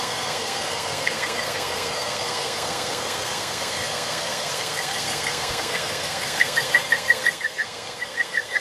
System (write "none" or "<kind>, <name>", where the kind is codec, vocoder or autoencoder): codec, SNAC